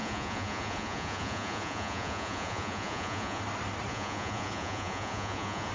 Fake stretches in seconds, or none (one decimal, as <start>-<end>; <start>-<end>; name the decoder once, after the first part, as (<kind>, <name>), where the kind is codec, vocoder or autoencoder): 0.0-3.4 (vocoder, Vocos); 3.9-5.7